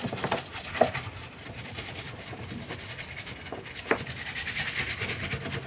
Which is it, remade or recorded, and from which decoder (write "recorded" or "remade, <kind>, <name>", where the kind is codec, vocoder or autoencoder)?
recorded